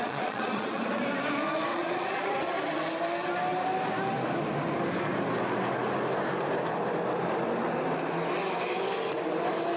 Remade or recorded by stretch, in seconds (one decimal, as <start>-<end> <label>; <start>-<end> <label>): 0.0-1.0 remade; 1.0-1.7 recorded; 1.7-2.4 remade; 2.4-9.8 recorded